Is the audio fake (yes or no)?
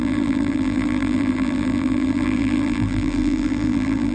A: yes